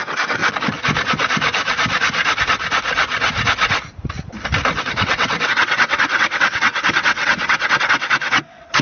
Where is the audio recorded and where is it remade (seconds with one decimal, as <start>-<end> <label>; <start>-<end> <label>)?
0.0-0.4 remade; 0.4-4.8 recorded; 4.8-8.8 remade